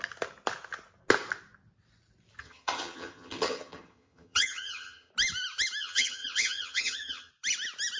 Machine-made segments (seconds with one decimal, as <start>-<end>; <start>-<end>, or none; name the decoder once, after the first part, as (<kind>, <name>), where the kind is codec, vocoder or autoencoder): 2.4-5.1 (vocoder, HiFi-GAN); 5.8-7.3